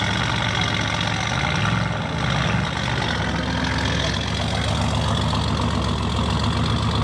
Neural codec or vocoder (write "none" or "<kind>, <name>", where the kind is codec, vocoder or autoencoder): none